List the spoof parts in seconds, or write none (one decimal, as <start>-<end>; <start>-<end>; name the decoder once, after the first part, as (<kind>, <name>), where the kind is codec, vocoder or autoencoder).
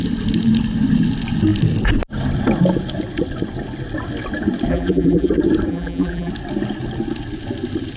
4.7-5.3 (vocoder, BigVGAN v2); 5.7-6.3